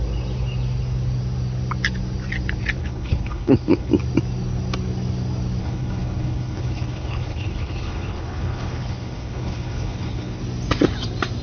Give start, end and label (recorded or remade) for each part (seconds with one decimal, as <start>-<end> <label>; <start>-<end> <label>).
0.0-2.8 recorded; 2.8-3.9 remade; 3.9-5.6 recorded; 5.6-10.4 remade; 10.4-11.4 recorded